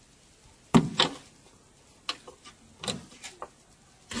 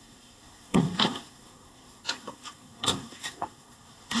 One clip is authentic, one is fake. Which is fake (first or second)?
second